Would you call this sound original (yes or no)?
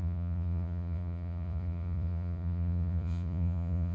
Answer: no